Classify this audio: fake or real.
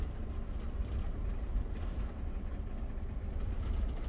fake